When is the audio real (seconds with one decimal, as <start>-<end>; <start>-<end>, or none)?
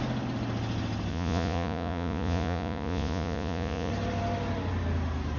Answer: 0.0-1.1; 3.9-5.4